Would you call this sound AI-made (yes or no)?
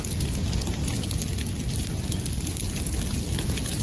no